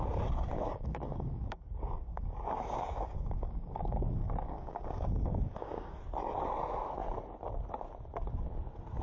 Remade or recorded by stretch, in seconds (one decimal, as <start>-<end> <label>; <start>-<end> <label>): 0.0-0.7 recorded; 0.7-6.0 remade; 6.0-9.0 recorded